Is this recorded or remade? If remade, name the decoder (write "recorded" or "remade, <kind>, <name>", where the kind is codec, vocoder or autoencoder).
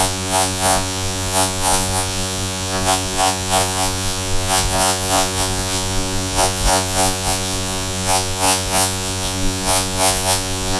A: remade, vocoder, Vocos